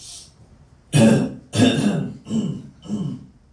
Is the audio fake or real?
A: real